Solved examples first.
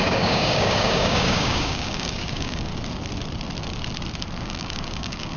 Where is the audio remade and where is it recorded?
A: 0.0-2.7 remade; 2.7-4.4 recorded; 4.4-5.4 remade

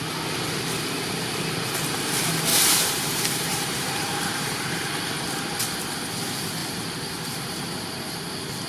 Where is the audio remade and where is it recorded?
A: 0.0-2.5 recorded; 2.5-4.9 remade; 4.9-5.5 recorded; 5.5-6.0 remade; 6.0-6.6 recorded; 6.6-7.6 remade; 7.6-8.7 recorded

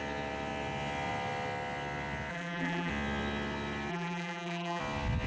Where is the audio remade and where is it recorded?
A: 0.0-2.3 recorded; 2.3-2.9 remade; 2.9-3.9 recorded; 3.9-4.8 remade; 4.8-5.3 recorded